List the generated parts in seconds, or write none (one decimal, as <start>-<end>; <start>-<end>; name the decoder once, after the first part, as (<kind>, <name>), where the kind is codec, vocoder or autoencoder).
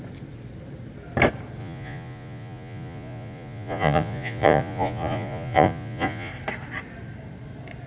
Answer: 1.6-6.3 (vocoder, Vocos)